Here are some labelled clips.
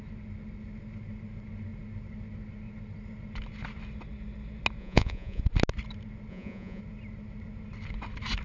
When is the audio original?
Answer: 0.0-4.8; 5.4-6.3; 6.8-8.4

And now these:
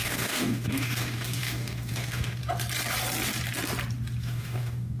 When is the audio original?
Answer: 2.4-4.2

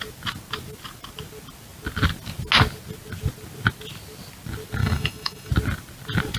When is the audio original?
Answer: 0.0-4.8; 5.5-6.4